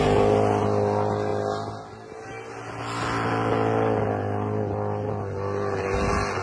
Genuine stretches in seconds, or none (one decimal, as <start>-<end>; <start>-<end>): 0.0-6.4